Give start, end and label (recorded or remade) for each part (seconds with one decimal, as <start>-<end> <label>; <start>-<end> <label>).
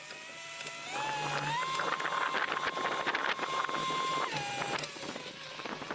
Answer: 0.0-5.9 recorded